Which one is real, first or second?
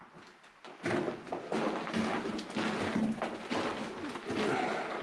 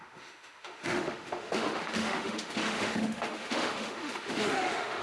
first